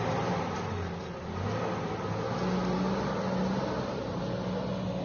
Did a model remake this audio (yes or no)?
no